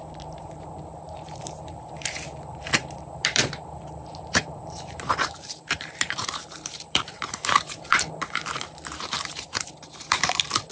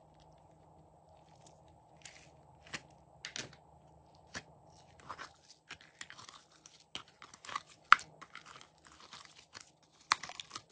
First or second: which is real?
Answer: second